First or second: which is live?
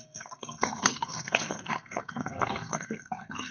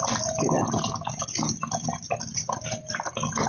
second